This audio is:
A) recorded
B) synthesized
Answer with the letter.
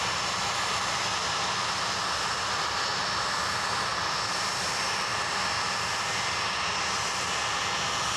A